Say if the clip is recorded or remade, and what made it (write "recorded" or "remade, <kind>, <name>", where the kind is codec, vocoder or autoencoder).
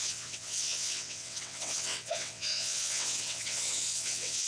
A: remade, vocoder, WaveNeXt